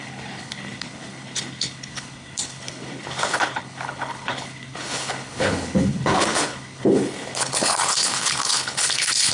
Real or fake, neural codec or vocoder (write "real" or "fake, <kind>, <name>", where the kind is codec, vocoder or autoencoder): fake, codec, HILCodec